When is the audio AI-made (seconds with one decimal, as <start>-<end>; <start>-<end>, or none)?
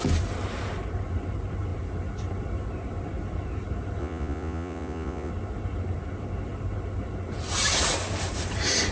4.0-5.3